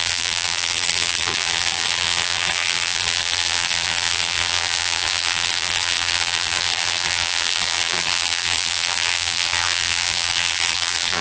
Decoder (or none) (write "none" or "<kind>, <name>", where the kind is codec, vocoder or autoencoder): vocoder, BigVGAN v2